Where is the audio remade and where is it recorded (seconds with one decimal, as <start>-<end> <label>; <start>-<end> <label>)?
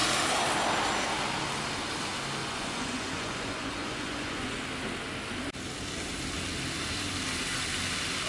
0.0-2.4 recorded; 2.4-4.6 remade; 4.6-8.3 recorded